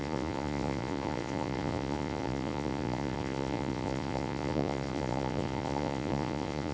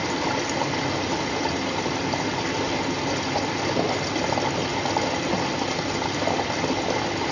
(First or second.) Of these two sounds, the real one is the second